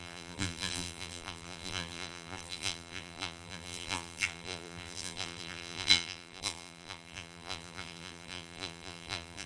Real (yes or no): no